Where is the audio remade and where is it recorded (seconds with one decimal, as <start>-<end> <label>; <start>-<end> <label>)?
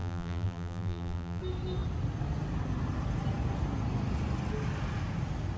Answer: 0.0-1.4 remade; 1.4-5.6 recorded